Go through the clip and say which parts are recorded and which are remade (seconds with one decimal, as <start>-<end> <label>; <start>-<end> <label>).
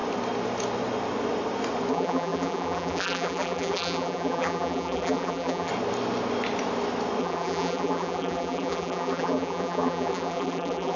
0.0-1.9 recorded; 1.9-5.7 remade; 5.7-7.2 recorded; 7.2-11.0 remade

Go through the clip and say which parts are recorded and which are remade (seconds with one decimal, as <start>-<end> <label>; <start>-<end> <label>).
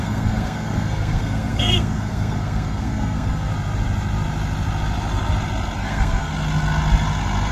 0.0-3.5 remade; 3.5-5.8 recorded; 5.8-6.3 remade; 6.3-7.5 recorded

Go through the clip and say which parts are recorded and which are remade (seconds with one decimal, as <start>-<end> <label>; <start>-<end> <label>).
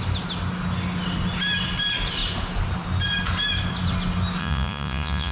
0.0-4.4 recorded; 4.4-5.3 remade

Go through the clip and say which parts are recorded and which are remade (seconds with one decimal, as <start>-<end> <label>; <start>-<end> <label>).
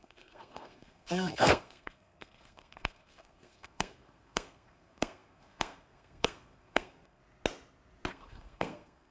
0.0-7.2 remade; 7.2-8.1 recorded; 8.1-9.1 remade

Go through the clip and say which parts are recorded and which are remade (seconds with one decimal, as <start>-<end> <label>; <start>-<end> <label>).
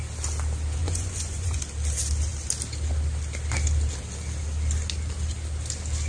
0.0-0.8 recorded; 0.8-1.6 remade; 1.6-6.1 recorded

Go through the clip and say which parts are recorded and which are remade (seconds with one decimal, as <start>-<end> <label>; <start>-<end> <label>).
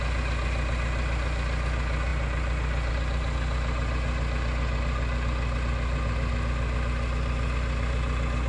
0.0-8.5 recorded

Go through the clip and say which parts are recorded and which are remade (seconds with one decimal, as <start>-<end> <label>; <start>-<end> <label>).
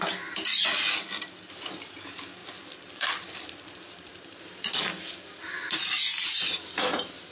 0.0-2.4 recorded; 2.4-4.4 remade; 4.4-6.1 recorded; 6.1-7.3 remade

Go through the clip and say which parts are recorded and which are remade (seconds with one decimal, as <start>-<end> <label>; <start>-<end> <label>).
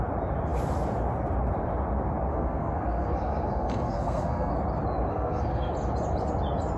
0.0-2.3 recorded; 2.3-4.5 remade; 4.5-5.1 recorded; 5.1-5.7 remade; 5.7-6.8 recorded